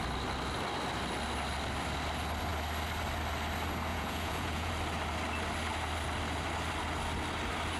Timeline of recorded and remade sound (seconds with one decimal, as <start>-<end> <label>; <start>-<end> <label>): 0.0-3.9 recorded; 3.9-4.7 remade; 4.7-7.8 recorded